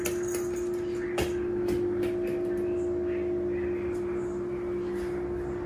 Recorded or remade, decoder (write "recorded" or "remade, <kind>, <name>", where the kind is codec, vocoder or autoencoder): recorded